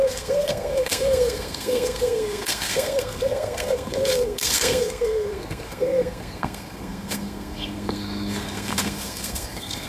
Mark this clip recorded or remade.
remade